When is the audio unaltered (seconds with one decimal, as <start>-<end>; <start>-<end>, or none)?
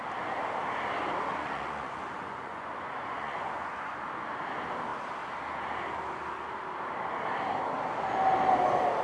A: 0.0-1.3; 4.0-9.0